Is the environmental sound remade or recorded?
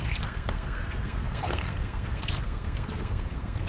remade